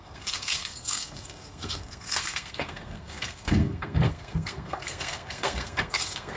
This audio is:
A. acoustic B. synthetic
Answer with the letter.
B